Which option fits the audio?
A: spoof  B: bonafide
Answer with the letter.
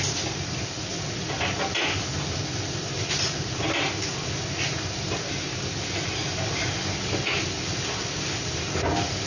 B